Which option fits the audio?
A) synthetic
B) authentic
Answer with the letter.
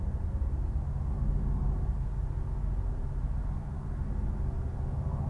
B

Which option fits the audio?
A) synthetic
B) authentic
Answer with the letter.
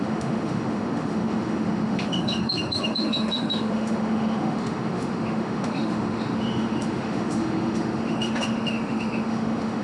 A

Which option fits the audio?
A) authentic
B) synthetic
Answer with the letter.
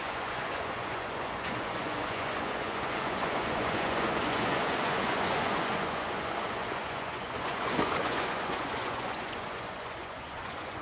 B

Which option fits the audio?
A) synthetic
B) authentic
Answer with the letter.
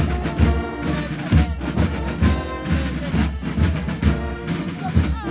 B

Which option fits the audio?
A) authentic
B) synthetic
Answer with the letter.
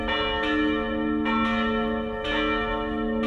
A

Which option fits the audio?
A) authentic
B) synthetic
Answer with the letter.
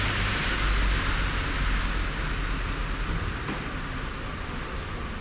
A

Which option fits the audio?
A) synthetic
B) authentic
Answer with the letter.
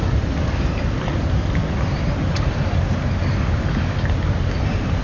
B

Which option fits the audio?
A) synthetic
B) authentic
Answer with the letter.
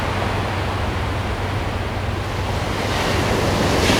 B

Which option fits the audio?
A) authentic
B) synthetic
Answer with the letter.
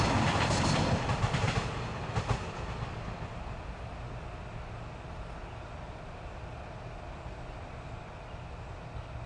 A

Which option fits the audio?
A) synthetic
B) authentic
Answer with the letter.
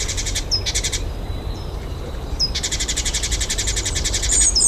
A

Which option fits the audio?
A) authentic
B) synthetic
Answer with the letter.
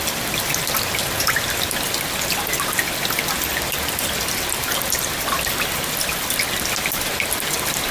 A